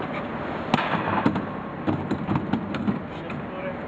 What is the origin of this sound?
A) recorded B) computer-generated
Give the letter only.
A